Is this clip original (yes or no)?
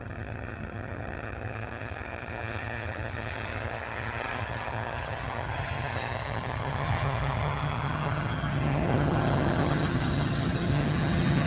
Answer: no